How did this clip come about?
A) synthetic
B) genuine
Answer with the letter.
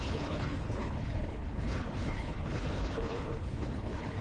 A